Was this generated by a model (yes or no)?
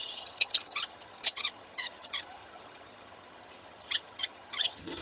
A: yes